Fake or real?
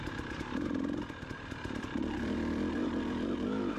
fake